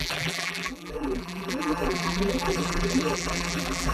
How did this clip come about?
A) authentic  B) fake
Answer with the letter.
B